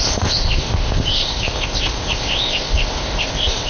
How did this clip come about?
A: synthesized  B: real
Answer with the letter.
A